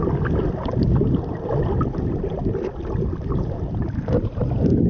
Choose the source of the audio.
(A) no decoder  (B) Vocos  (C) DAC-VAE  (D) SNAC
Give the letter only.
A